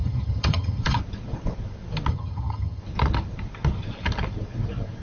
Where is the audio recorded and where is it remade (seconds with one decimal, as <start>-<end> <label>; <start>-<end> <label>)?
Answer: 0.0-1.0 remade; 1.0-2.1 recorded; 2.1-2.8 remade; 2.8-5.0 recorded